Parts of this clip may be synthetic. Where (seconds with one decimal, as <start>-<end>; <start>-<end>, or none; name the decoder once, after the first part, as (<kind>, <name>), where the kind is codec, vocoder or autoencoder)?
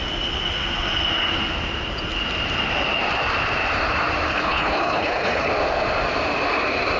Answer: 4.3-5.5 (codec, HILCodec)